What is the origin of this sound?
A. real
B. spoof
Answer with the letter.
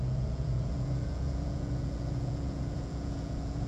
B